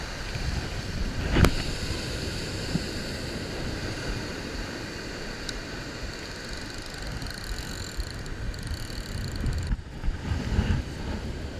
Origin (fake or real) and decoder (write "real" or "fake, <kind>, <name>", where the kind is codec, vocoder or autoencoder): real